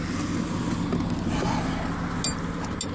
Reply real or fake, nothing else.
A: real